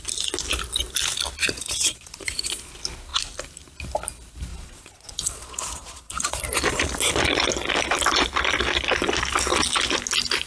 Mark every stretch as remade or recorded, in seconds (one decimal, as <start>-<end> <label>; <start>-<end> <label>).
0.0-1.4 recorded; 1.4-2.5 remade; 2.5-4.5 recorded; 4.5-6.4 remade; 6.4-10.5 recorded

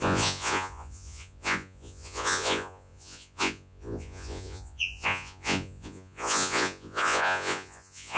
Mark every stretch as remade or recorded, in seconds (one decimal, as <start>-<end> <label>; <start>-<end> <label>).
0.0-8.2 remade

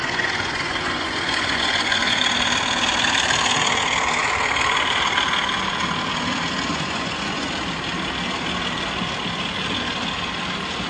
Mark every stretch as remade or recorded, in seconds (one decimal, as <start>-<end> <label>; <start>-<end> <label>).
0.0-2.2 remade; 2.2-6.7 recorded; 6.7-7.5 remade; 7.5-10.9 recorded

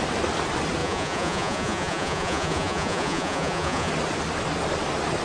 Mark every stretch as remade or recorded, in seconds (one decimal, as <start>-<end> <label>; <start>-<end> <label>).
0.0-0.8 recorded; 0.8-3.9 remade; 3.9-5.2 recorded